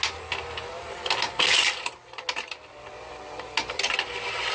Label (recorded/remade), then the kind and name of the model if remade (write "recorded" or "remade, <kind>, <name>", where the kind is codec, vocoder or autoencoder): recorded